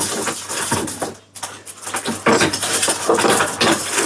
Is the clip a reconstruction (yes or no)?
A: no